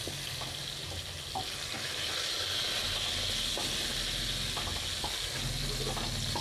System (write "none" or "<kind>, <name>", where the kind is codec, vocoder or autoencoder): none